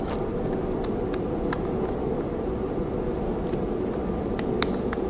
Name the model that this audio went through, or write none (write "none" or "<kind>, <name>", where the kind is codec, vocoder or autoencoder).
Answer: none